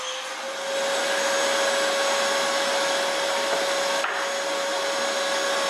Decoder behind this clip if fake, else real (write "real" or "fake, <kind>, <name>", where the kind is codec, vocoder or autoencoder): real